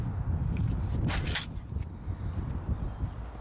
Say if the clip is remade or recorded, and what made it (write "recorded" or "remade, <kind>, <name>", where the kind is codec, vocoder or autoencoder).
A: recorded